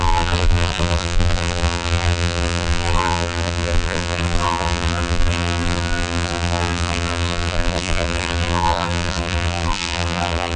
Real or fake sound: fake